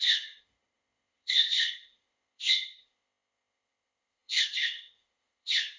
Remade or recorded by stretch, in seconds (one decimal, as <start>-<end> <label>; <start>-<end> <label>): 0.0-5.8 remade